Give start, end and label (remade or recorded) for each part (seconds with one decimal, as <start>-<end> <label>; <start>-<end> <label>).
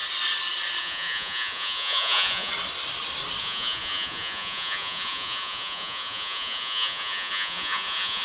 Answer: 0.0-0.8 recorded; 0.8-2.5 remade; 2.5-3.4 recorded; 3.4-8.2 remade